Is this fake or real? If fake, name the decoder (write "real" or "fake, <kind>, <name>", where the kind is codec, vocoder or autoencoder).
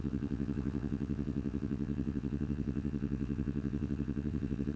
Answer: fake, vocoder, WaveNeXt